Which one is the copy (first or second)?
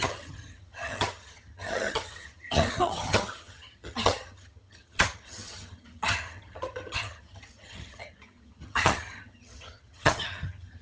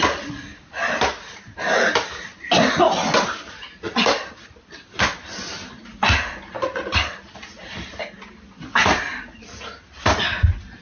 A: first